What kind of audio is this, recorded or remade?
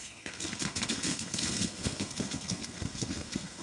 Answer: remade